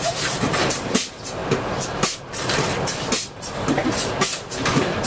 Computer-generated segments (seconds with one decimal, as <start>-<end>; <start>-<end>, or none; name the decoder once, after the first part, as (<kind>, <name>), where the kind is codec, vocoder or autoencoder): 0.0-1.4 (vocoder, BigVGAN v2); 1.9-3.8; 4.5-5.1